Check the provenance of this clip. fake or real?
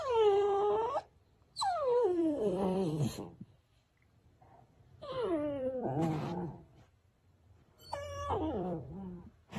fake